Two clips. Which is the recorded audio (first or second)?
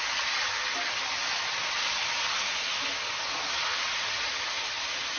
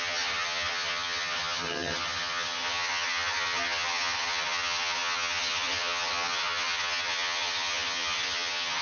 first